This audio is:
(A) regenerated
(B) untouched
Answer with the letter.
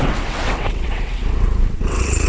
A